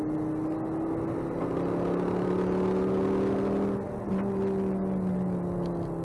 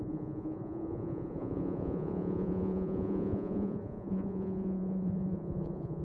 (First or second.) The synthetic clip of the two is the second